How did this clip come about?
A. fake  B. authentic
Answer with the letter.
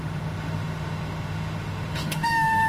A